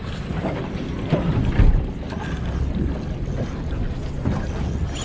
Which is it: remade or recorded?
recorded